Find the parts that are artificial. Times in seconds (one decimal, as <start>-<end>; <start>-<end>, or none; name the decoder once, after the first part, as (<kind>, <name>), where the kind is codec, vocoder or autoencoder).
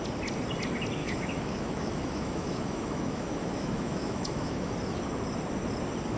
1.0-4.7 (autoencoder, DAC-VAE)